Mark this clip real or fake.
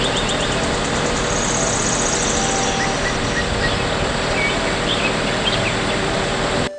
real